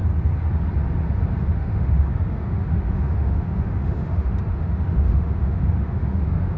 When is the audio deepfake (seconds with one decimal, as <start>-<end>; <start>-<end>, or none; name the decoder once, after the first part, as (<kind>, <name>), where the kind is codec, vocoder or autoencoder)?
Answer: 1.5-6.6 (autoencoder, DAC-VAE)